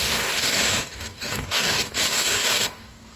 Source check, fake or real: fake